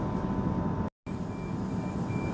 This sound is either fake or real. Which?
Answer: real